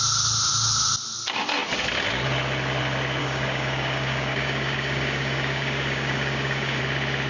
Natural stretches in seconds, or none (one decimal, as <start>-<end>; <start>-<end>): 0.0-3.2; 6.8-7.3